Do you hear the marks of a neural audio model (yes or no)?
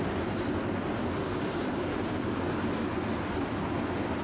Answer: no